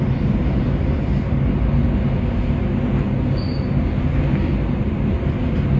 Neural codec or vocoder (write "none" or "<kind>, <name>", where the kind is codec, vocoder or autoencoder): none